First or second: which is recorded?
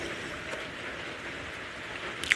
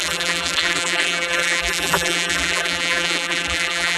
first